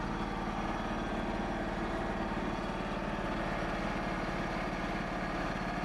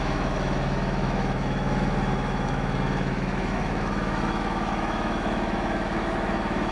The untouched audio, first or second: first